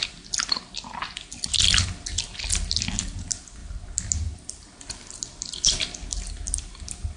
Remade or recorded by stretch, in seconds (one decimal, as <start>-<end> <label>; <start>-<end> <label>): 0.0-7.2 recorded